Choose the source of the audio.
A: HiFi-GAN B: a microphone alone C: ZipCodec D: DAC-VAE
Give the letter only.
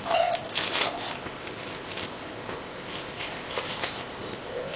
C